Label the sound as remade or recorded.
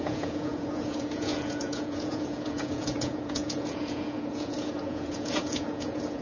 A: remade